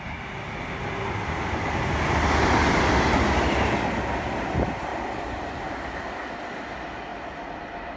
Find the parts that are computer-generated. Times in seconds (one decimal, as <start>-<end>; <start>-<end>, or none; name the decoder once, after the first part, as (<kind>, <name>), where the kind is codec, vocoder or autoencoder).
none